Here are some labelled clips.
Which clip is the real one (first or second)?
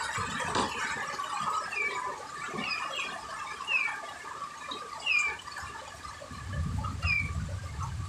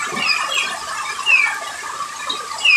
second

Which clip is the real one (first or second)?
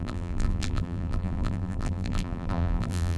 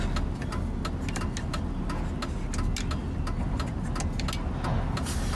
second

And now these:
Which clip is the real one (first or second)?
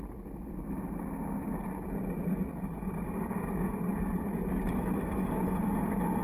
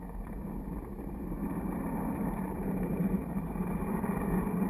first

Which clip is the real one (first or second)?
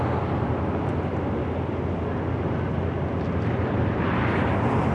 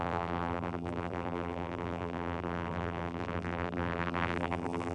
first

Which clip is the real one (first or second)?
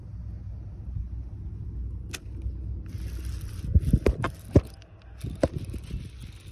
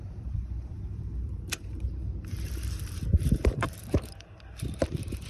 first